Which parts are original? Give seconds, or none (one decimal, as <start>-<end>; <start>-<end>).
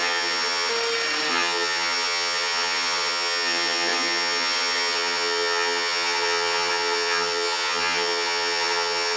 0.7-1.3